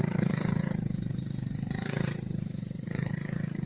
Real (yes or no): no